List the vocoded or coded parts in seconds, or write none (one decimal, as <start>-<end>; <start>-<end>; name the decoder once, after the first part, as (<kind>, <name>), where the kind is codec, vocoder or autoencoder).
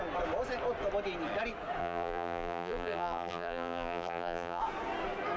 1.8-4.6 (vocoder, BigVGAN v2)